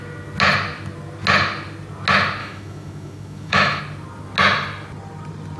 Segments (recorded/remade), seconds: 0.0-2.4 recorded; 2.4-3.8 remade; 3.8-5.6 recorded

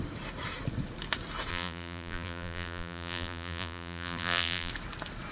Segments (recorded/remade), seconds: 0.0-1.5 recorded; 1.5-4.7 remade; 4.7-5.3 recorded

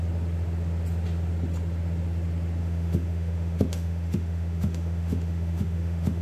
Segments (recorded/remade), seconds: 0.0-2.6 recorded; 2.6-6.2 remade